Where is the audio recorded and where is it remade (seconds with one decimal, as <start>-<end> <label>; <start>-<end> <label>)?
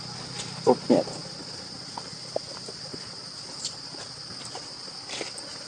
0.0-5.7 recorded